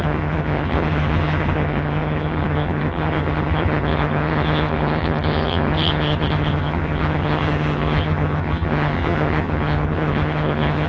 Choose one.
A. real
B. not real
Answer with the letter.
B